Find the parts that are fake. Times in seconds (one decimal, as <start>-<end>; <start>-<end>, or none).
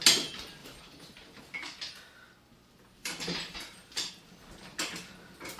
0.6-1.4; 3.0-4.1